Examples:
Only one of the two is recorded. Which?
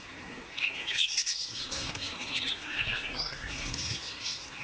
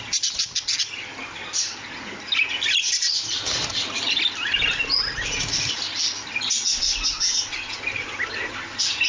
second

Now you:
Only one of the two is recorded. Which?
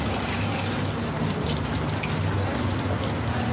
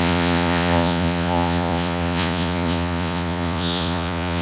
first